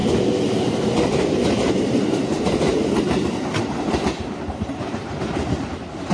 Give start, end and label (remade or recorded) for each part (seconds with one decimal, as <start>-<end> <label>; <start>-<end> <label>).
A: 0.0-0.6 recorded; 0.6-6.1 remade